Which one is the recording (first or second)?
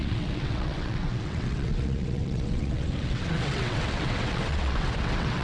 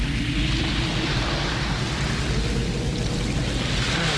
second